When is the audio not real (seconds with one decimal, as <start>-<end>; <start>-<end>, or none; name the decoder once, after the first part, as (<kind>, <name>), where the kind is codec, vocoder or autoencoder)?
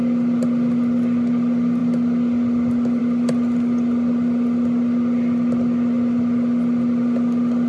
none